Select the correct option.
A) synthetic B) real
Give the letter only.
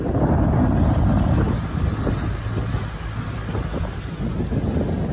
B